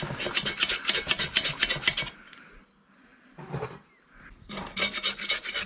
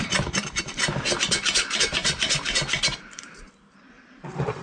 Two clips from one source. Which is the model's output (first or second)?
second